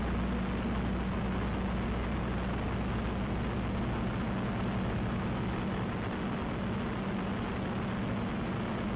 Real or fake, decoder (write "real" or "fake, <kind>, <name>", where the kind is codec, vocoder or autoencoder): real